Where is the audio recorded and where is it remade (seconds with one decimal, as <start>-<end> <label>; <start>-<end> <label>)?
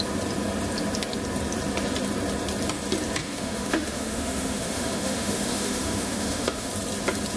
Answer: 0.0-3.2 recorded; 3.2-6.7 remade; 6.7-7.4 recorded